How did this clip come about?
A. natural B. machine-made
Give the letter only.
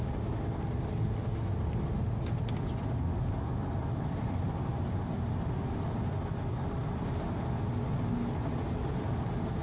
A